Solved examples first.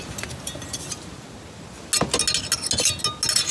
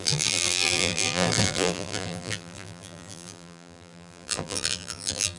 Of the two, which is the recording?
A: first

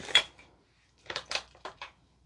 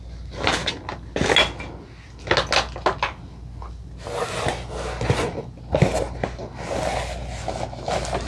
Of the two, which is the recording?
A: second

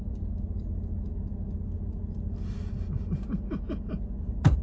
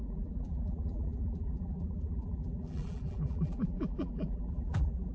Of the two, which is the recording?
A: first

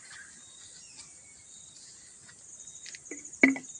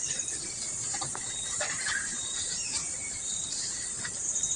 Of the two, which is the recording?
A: first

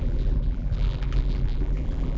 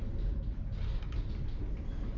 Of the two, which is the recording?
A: second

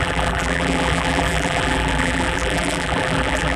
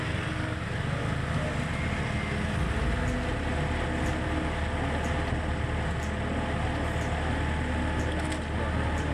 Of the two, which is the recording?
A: second